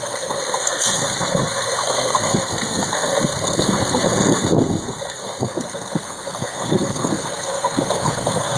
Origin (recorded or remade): remade